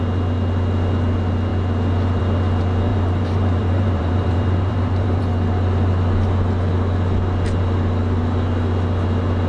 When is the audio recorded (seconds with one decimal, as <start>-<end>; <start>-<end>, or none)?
0.0-2.9; 5.2-9.5